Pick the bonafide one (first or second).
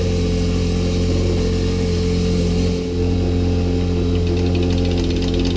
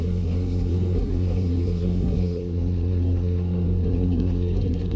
first